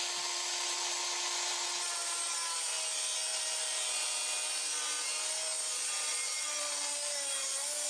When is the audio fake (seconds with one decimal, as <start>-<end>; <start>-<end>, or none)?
none